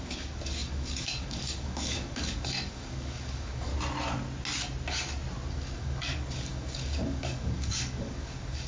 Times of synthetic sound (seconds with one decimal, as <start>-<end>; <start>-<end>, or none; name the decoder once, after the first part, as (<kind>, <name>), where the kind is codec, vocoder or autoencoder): 0.0-3.7 (codec, DAC); 5.5-8.7